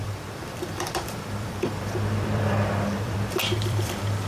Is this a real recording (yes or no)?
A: no